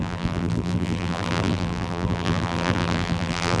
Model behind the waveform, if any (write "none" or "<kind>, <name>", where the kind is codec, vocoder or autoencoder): vocoder, BigVGAN v2